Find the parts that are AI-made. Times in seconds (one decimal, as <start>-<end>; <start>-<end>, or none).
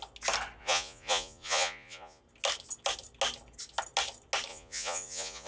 0.6-2.2; 4.5-5.5